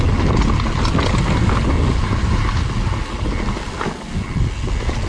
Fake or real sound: real